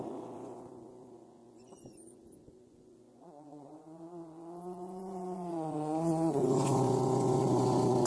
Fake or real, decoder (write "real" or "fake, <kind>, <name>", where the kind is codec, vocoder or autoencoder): fake, vocoder, Vocos